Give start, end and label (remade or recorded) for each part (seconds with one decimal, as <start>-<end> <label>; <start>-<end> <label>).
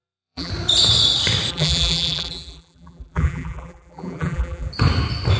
0.0-0.5 remade; 0.5-1.5 recorded; 1.5-4.7 remade; 4.7-5.4 recorded